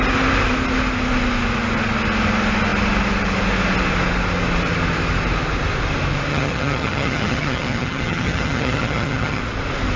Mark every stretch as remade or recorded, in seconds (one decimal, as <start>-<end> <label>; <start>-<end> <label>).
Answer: 0.0-6.3 recorded; 6.3-9.4 remade; 9.4-10.0 recorded